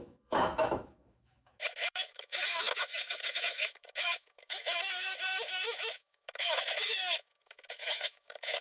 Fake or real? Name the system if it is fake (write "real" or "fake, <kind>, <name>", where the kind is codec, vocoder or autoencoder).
fake, autoencoder, DAC-VAE